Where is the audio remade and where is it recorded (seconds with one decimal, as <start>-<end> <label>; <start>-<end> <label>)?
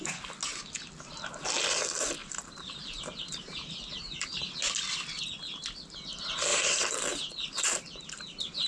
0.0-2.2 recorded; 2.2-4.4 remade; 4.4-6.5 recorded; 6.5-8.7 remade